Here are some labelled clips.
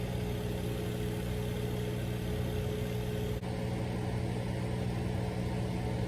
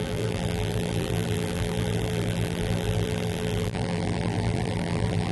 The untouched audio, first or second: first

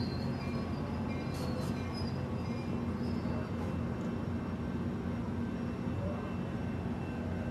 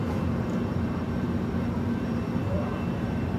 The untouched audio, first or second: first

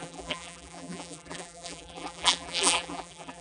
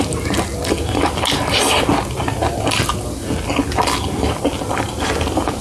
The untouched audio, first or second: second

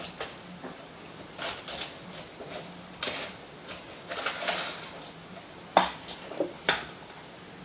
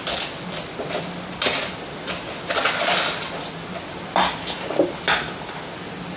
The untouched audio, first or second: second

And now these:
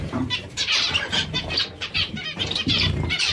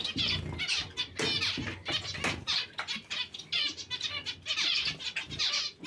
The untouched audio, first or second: second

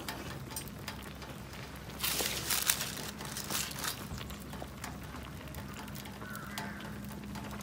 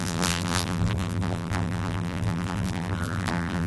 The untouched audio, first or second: first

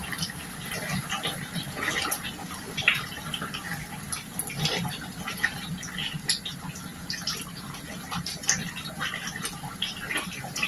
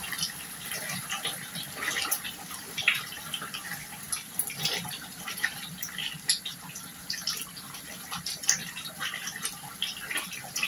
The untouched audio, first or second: first